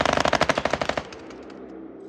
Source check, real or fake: real